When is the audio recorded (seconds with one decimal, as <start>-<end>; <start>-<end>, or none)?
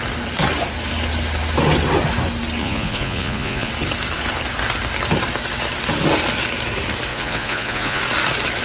0.0-2.6; 3.7-7.1; 8.0-8.6